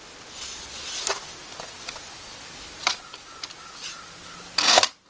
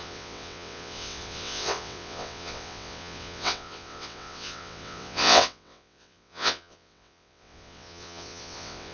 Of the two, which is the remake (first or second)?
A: second